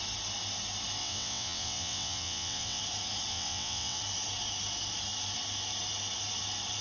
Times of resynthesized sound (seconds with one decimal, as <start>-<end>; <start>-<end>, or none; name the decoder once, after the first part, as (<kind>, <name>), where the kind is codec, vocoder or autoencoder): 1.0-2.8 (vocoder, WaveNeXt); 3.3-4.0